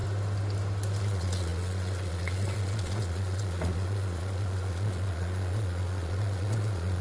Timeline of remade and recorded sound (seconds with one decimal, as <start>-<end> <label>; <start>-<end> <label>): 0.0-1.0 recorded; 1.0-7.0 remade